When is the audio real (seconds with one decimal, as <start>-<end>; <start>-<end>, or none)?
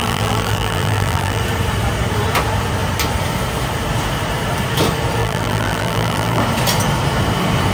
1.4-5.2; 6.4-7.7